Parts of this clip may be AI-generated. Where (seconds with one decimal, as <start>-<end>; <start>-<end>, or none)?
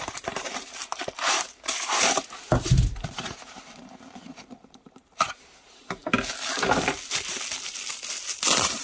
0.0-6.0; 8.4-8.8